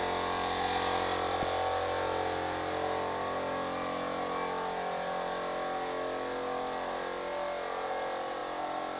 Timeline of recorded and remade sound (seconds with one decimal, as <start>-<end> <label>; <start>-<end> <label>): 0.0-9.0 recorded